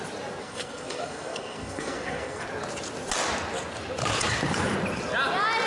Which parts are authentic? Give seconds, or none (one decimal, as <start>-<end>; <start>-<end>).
0.0-0.4; 2.4-5.7